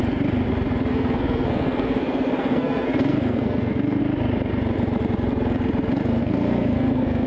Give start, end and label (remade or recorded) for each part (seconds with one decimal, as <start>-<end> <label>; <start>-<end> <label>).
0.0-0.9 recorded; 0.9-4.0 remade; 4.0-6.2 recorded; 6.2-7.3 remade